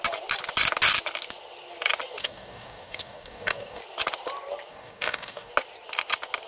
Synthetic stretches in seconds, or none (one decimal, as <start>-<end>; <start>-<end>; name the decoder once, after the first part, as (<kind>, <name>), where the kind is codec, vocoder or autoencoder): 2.2-3.8 (codec, DAC); 4.7-5.5